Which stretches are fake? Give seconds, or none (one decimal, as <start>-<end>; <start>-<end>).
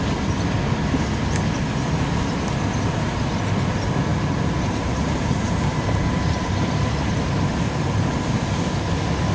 4.1-7.8